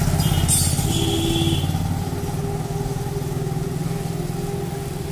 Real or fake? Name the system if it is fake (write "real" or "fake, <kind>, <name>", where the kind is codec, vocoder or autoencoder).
real